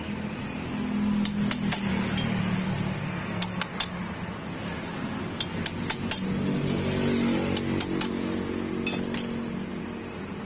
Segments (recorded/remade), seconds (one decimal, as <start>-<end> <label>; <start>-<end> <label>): 0.0-3.0 recorded; 3.0-3.6 remade; 3.6-10.5 recorded